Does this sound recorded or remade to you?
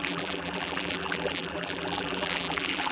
remade